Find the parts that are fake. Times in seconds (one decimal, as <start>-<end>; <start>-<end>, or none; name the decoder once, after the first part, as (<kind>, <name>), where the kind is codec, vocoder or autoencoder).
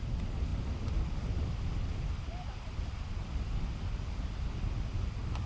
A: none